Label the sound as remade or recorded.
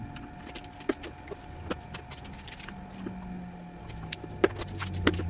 recorded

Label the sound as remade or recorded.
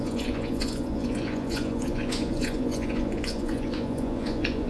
remade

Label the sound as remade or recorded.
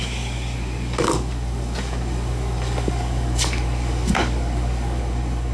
remade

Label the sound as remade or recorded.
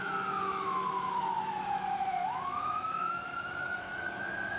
remade